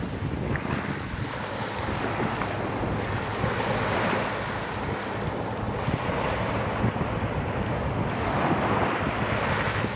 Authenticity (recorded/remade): recorded